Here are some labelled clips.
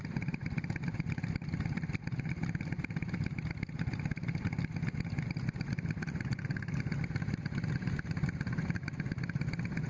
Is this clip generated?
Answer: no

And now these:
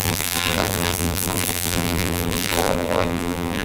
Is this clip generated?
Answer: yes